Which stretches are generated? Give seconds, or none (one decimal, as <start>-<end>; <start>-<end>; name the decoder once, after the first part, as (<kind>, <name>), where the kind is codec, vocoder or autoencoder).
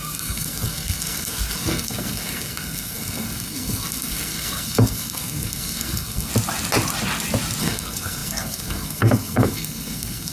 0.0-6.3 (codec, SNAC); 7.6-10.3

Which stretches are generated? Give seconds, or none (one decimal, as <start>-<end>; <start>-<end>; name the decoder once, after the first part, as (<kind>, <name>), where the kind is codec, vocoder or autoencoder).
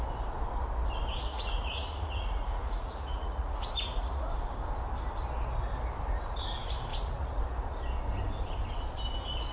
1.3-4.3 (vocoder, Vocos); 6.9-7.4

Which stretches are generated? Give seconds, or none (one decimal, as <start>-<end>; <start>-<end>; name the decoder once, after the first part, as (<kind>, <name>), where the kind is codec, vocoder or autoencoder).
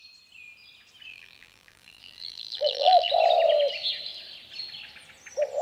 1.1-3.1 (vocoder, BigVGAN v2)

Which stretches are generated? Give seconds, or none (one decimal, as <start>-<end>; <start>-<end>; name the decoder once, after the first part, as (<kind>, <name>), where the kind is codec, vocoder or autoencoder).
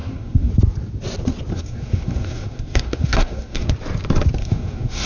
0.0-0.5 (codec, SNAC); 1.5-3.7; 4.4-5.1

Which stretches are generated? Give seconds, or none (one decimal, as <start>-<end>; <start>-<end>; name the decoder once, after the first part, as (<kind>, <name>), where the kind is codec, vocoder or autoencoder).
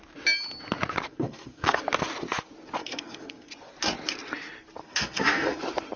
1.1-1.8 (codec, SNAC); 2.8-3.5; 4.8-5.6